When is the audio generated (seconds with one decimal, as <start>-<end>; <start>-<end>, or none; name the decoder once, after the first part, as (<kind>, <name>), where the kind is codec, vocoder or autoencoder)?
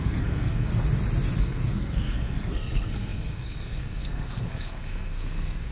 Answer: 0.0-0.7 (codec, SNAC); 1.4-5.7